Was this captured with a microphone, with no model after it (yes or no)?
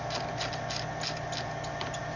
yes